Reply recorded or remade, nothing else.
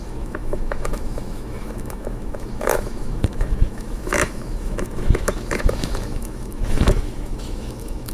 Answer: remade